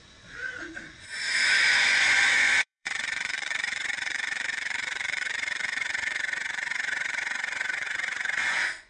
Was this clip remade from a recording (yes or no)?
yes